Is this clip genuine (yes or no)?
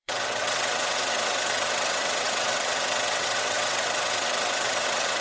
no